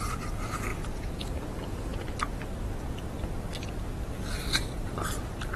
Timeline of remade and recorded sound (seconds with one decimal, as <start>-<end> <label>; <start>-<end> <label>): 0.0-0.7 recorded; 0.7-1.3 remade; 1.3-5.6 recorded